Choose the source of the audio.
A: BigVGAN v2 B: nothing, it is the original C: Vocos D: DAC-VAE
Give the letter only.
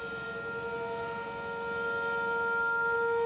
B